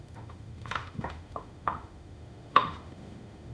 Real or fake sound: fake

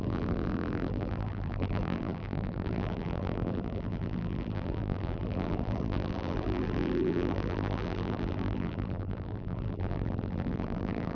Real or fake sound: fake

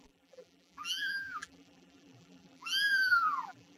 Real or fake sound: fake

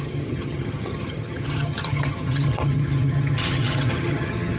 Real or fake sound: fake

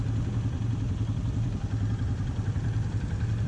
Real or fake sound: fake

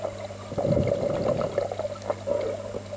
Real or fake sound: real